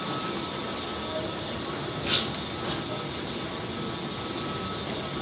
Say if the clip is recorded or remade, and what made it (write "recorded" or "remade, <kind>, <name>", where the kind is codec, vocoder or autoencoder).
recorded